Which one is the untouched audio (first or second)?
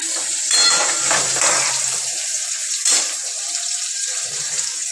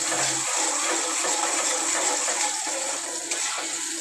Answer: second